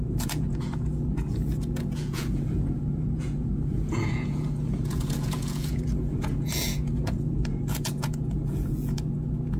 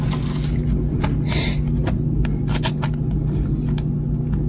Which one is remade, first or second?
first